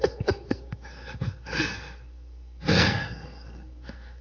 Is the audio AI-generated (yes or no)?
yes